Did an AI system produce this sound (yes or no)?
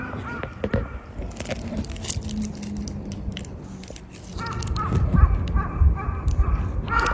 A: no